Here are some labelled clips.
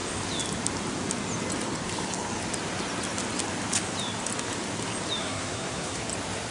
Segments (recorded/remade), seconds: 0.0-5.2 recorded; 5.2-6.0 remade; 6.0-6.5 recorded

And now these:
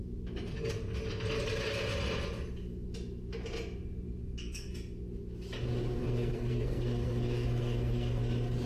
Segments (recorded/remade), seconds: 0.0-4.2 recorded; 4.2-4.7 remade; 4.7-6.0 recorded; 6.0-8.2 remade; 8.2-8.7 recorded